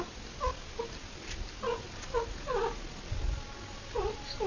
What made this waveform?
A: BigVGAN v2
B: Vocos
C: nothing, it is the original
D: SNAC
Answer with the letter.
C